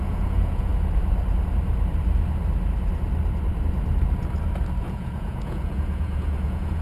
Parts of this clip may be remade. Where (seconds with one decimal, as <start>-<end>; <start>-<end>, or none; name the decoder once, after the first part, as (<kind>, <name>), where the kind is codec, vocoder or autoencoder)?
0.0-0.7 (vocoder, Vocos); 4.8-6.8